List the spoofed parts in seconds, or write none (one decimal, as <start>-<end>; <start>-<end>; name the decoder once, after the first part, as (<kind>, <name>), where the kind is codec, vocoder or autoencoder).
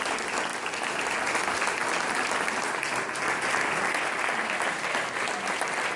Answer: none